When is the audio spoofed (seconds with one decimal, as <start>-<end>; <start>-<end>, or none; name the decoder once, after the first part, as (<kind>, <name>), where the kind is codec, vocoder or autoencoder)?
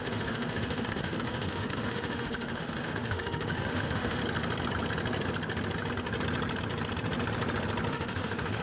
0.0-4.2 (autoencoder, DAC-VAE); 7.9-8.6